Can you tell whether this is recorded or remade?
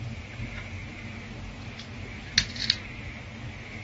recorded